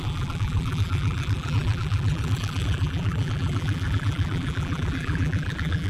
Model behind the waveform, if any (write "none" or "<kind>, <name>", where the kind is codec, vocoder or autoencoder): vocoder, BigVGAN v2